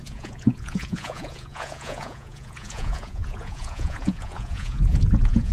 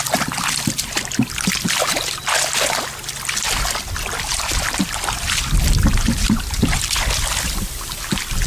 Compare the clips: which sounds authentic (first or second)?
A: second